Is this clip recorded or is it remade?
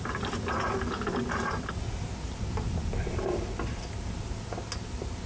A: recorded